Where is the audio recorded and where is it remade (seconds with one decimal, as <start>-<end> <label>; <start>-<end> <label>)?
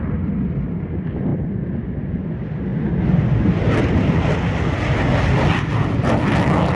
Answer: 0.0-6.8 recorded